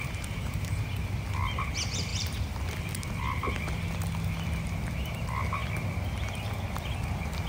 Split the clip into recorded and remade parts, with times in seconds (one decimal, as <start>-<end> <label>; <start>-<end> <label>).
0.0-0.9 remade; 0.9-2.1 recorded; 2.1-2.7 remade; 2.7-7.5 recorded